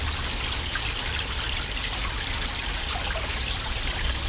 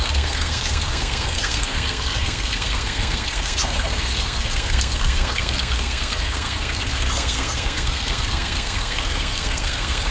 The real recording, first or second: first